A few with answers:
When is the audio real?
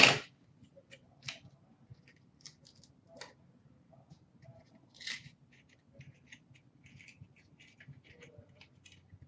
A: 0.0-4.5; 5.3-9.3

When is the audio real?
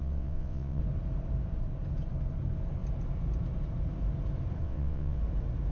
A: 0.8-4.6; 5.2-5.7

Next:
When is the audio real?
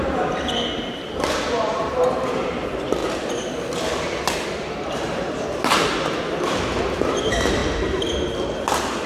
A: 3.0-4.3; 7.6-9.1